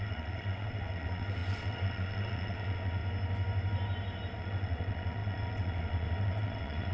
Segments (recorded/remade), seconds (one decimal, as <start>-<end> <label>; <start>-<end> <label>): 0.0-3.0 remade; 3.0-4.4 recorded; 4.4-6.9 remade